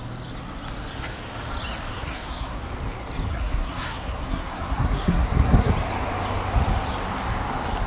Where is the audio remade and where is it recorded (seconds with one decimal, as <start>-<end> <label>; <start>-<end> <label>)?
0.0-1.9 recorded; 1.9-2.6 remade; 2.6-3.3 recorded; 3.3-5.7 remade; 5.7-7.9 recorded